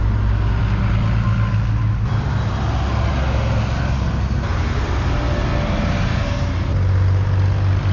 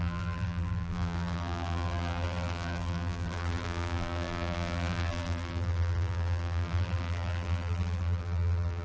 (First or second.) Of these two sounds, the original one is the first